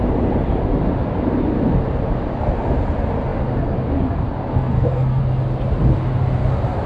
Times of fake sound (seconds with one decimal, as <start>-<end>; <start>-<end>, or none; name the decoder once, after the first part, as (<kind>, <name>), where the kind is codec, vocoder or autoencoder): 4.5-5.2 (codec, SNAC)

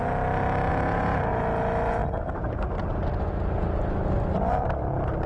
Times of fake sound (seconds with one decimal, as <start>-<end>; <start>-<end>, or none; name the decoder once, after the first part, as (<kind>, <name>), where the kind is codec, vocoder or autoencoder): none

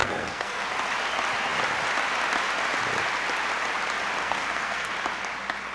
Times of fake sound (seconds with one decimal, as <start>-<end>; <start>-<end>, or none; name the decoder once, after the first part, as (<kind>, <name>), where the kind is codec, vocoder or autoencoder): 0.0-0.7 (codec, SNAC); 4.2-4.9

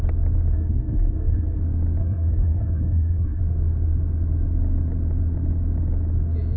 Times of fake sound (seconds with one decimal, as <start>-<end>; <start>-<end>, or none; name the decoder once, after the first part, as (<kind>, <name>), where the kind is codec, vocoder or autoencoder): 0.5-1.6 (codec, SNAC); 2.0-3.4